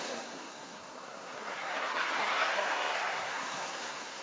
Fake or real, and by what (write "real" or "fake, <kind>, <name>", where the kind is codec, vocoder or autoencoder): fake, codec, SNAC